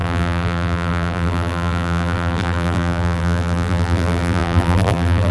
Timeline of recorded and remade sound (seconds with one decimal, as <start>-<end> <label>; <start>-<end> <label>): 0.0-5.3 remade